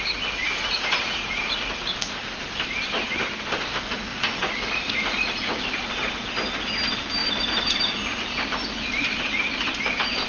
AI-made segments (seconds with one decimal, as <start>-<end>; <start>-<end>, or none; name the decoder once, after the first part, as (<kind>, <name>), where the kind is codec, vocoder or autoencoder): 0.4-2.1 (vocoder, Vocos); 4.1-5.8